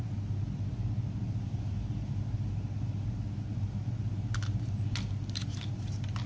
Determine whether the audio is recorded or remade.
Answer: recorded